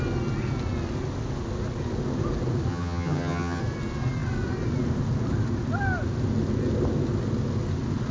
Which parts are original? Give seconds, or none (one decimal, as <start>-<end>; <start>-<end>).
0.0-2.7; 3.6-8.1